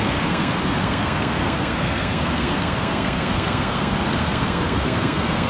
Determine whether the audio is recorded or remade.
remade